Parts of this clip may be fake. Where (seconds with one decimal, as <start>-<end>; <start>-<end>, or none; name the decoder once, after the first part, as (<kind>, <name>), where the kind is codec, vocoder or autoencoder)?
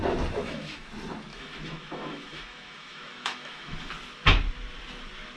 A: 0.4-0.9 (autoencoder, DAC-VAE); 1.3-3.9